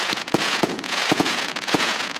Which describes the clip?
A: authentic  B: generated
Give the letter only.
B